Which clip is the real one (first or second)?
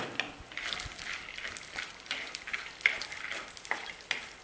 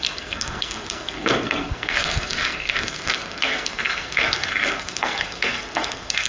first